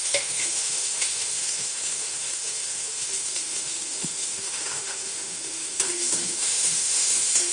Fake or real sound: fake